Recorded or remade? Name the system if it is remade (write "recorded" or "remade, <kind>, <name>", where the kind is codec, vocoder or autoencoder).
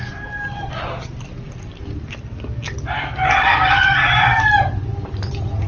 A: recorded